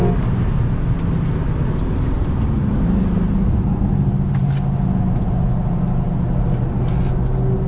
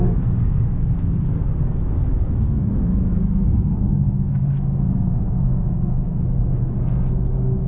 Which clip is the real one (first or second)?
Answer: first